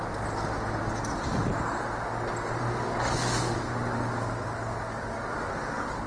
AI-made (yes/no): no